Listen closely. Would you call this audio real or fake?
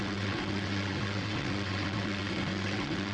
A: fake